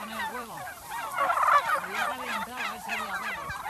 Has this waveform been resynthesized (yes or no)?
yes